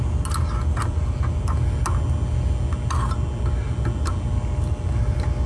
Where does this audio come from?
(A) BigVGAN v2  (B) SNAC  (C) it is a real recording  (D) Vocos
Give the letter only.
C